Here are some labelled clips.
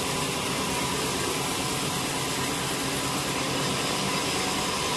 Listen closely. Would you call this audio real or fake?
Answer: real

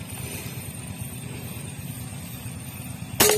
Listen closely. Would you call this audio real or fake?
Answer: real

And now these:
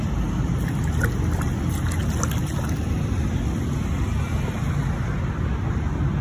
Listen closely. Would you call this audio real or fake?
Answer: real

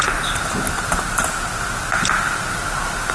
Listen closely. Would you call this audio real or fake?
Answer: real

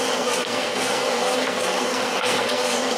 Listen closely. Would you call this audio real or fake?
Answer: fake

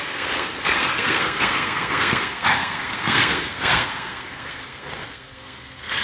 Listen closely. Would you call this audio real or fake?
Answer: fake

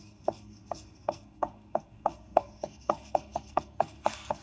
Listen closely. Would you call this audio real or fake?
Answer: fake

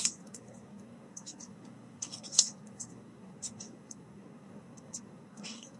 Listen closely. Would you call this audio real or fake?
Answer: fake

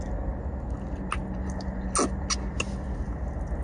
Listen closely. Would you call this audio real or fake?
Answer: real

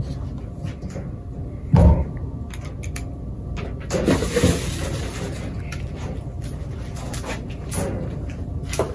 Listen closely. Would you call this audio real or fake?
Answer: real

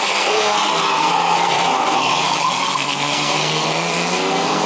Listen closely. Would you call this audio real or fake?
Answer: fake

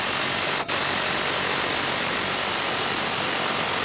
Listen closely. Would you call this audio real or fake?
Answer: real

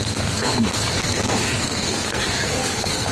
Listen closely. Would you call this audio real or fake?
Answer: fake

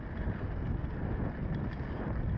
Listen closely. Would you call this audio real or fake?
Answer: real